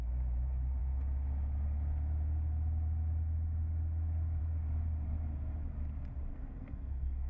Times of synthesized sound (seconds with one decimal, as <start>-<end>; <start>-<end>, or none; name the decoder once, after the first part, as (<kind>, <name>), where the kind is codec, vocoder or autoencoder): 6.3-7.3 (codec, SNAC)